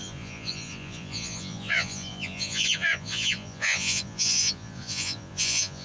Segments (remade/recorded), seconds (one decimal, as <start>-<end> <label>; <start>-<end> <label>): 0.0-5.8 remade